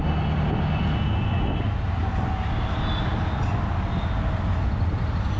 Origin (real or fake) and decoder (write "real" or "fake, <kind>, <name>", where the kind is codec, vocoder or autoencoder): real